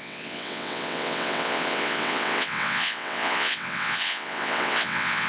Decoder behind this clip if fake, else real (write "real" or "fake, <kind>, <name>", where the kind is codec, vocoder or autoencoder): fake, vocoder, WaveNeXt